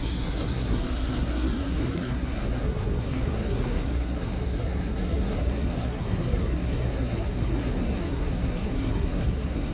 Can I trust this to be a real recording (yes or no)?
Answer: no